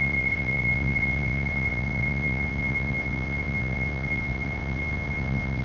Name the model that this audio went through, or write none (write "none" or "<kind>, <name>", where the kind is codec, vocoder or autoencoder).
vocoder, WaveNeXt